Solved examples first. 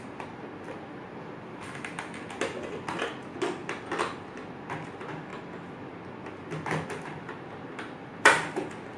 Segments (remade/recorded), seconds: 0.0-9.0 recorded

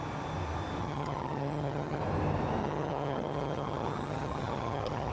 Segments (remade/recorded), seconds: 0.0-0.8 recorded; 0.8-2.0 remade; 2.0-2.6 recorded; 2.6-5.1 remade

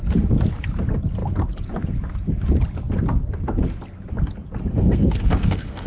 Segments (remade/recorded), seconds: 0.0-4.7 recorded; 4.7-5.9 remade

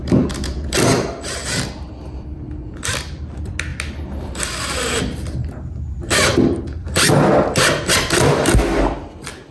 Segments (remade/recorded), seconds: 0.0-9.5 recorded

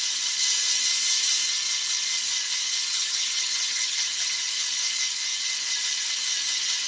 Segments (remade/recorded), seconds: 0.0-2.9 recorded; 2.9-4.5 remade; 4.5-6.9 recorded